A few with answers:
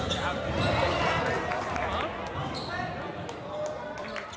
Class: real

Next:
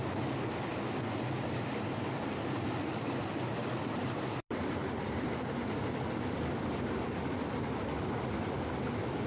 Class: real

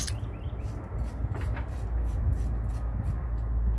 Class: real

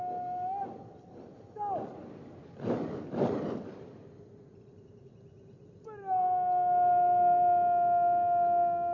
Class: real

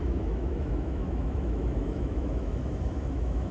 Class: fake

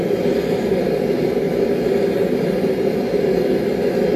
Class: real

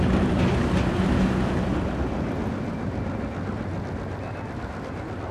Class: real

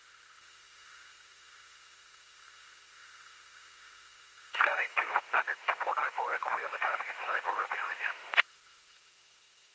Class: fake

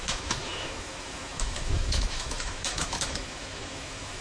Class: fake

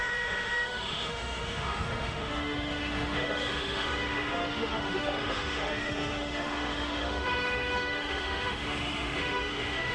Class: fake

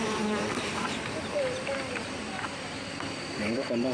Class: real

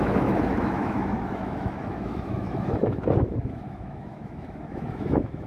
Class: fake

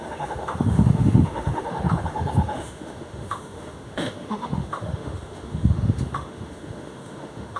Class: fake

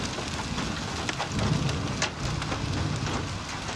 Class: real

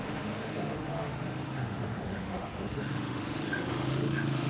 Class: fake